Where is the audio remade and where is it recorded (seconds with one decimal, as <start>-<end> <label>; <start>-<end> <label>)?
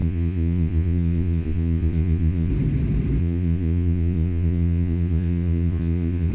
0.0-2.5 remade; 2.5-3.2 recorded; 3.2-6.3 remade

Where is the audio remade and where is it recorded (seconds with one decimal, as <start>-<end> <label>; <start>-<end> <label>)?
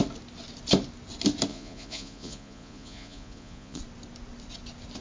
0.0-1.5 recorded; 1.5-3.8 remade; 3.8-5.0 recorded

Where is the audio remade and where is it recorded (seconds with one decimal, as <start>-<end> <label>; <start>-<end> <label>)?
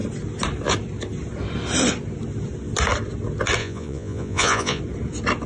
0.0-3.6 recorded; 3.6-4.8 remade; 4.8-5.5 recorded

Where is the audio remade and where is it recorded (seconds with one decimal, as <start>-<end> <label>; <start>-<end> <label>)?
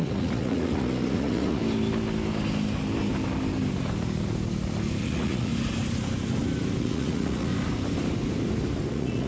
0.0-1.6 remade; 1.6-5.0 recorded; 5.0-5.5 remade; 5.5-6.8 recorded; 6.8-7.5 remade; 7.5-8.9 recorded; 8.9-9.3 remade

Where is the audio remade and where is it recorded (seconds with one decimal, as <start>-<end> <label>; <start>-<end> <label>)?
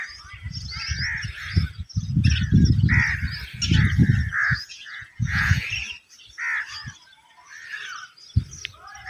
0.0-4.5 recorded; 4.5-5.7 remade; 5.7-9.1 recorded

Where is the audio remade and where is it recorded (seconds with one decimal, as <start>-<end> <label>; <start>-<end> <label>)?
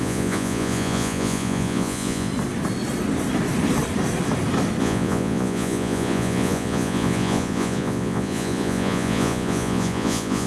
0.0-2.3 remade; 2.3-4.8 recorded; 4.8-10.5 remade